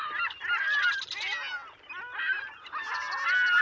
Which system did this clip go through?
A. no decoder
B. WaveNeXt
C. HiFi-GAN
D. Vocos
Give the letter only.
A